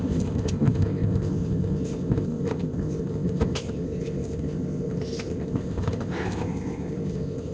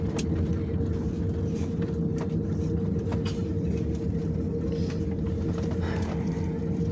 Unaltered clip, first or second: second